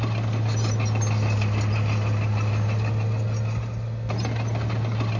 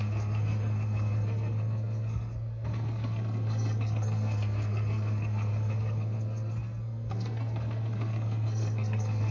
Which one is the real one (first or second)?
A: first